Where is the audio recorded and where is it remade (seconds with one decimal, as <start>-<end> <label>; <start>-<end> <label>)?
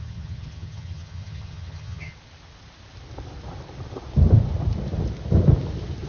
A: 0.0-2.1 remade; 2.1-6.1 recorded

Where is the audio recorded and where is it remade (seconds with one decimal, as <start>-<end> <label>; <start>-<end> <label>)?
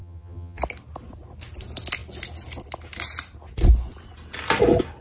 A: 0.0-0.6 remade; 0.6-5.0 recorded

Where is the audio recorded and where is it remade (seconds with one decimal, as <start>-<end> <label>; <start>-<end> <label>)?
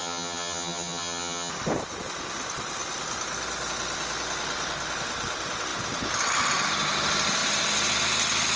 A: 0.0-1.5 remade; 1.5-8.6 recorded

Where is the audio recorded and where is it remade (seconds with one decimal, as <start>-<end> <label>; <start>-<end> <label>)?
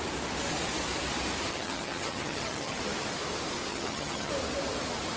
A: 0.0-1.5 recorded; 1.5-2.8 remade; 2.8-3.7 recorded; 3.7-4.3 remade; 4.3-5.2 recorded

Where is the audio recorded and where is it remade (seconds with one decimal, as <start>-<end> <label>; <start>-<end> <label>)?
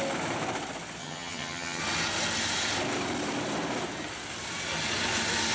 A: 0.0-1.0 recorded; 1.0-1.8 remade; 1.8-5.5 recorded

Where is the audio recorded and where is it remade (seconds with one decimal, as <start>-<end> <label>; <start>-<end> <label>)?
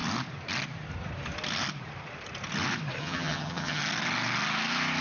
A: 0.0-3.0 recorded; 3.0-3.8 remade; 3.8-5.0 recorded